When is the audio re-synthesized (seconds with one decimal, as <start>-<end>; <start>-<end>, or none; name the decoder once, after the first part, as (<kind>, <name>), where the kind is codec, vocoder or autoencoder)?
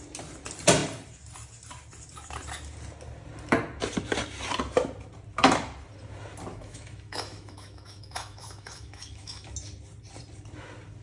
6.5-9.5 (autoencoder, DAC-VAE)